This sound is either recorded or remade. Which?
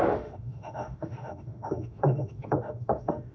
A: remade